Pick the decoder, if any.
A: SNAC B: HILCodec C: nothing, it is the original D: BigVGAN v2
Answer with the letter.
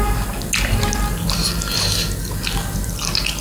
C